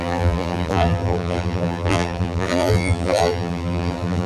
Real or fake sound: fake